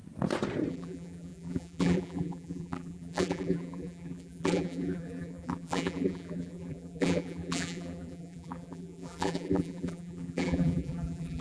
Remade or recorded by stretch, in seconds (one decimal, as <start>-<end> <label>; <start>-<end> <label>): 0.0-0.7 recorded; 0.7-11.4 remade